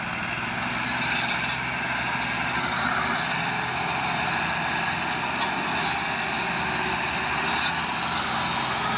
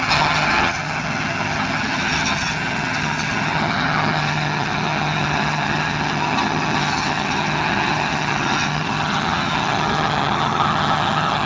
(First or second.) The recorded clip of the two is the first